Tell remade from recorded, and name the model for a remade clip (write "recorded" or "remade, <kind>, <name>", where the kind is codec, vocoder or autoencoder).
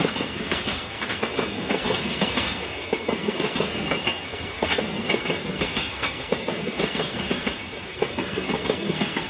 remade, codec, SNAC